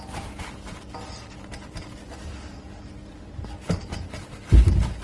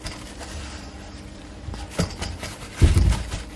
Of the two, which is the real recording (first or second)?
first